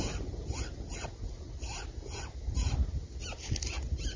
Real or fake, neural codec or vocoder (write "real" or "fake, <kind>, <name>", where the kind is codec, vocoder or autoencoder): real